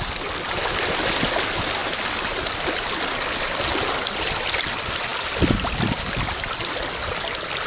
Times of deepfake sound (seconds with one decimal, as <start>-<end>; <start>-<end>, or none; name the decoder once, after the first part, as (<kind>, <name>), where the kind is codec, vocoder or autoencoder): none